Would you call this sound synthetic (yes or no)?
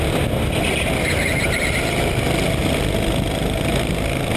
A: no